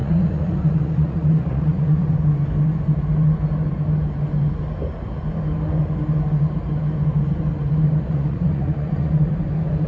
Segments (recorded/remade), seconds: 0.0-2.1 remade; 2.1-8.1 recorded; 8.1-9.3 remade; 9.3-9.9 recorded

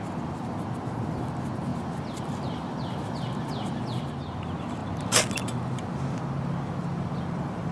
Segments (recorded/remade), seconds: 0.0-1.7 recorded; 1.7-4.1 remade; 4.1-6.9 recorded; 6.9-7.7 remade

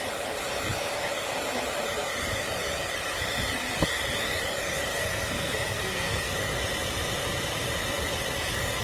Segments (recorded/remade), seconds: 0.0-4.9 recorded; 4.9-6.3 remade; 6.3-8.8 recorded

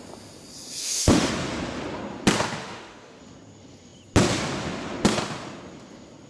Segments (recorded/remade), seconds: 0.0-0.8 recorded; 0.8-1.3 remade; 1.3-2.6 recorded; 2.6-3.2 remade; 3.2-6.3 recorded